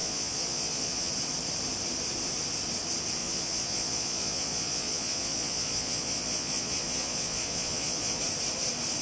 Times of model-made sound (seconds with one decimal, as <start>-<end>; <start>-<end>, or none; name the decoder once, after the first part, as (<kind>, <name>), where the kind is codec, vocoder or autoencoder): 0.0-1.1 (vocoder, Vocos); 3.2-8.2